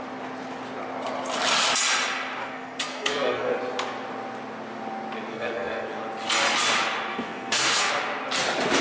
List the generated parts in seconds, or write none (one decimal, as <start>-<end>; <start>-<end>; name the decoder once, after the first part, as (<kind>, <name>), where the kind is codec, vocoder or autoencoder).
2.4-3.5 (codec, SNAC); 5.3-5.9; 7.1-7.9